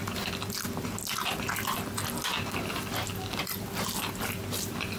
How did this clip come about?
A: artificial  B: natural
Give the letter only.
B